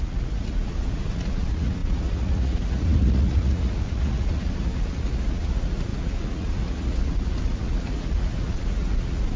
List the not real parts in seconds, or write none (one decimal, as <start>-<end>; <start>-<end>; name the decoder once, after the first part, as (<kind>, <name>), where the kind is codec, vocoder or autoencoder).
0.0-9.4 (vocoder, Vocos)

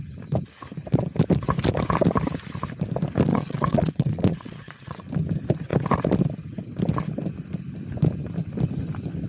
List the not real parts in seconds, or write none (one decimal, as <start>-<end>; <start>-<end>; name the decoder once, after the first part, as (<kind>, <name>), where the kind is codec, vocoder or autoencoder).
3.3-5.1 (vocoder, Vocos)

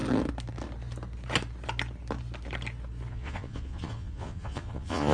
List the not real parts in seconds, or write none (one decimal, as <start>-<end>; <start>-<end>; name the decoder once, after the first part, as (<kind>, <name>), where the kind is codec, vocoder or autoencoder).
3.1-5.1 (vocoder, Vocos)

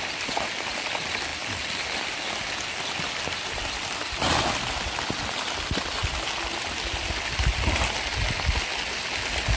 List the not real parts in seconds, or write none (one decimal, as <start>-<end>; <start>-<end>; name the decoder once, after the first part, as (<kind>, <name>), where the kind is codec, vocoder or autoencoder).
none

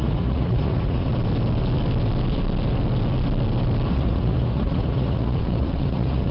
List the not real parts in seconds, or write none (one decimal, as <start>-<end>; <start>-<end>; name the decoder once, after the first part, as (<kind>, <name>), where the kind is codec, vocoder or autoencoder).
0.0-1.1 (vocoder, Vocos); 3.9-6.3

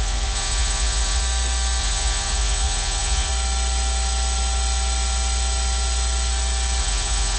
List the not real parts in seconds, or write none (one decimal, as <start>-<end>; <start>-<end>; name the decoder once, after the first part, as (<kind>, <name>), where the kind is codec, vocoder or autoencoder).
0.0-1.2 (vocoder, Vocos); 1.8-3.3; 6.8-7.4

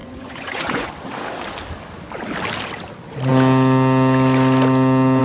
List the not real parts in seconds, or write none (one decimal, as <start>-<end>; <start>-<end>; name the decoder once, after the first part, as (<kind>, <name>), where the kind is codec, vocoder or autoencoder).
0.0-0.9 (vocoder, Vocos)